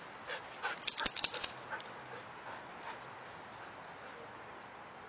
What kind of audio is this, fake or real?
real